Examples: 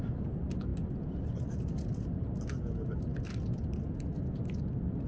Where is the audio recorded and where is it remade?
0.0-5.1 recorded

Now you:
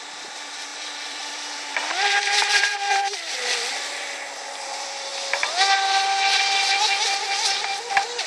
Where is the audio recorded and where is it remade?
0.0-5.1 remade; 5.1-8.3 recorded

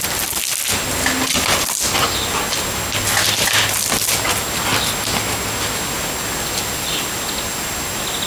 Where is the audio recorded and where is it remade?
0.0-8.3 recorded

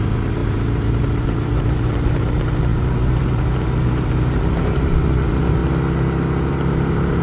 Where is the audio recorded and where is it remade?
0.0-5.6 remade; 5.6-6.7 recorded; 6.7-7.2 remade

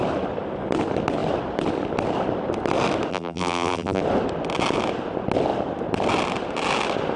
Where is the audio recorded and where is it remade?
0.0-3.1 recorded; 3.1-4.0 remade; 4.0-7.2 recorded

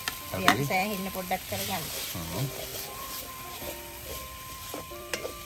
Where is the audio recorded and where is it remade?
0.0-5.5 remade